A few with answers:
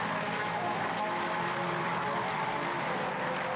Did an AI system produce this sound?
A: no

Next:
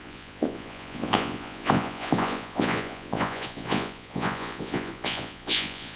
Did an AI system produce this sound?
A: yes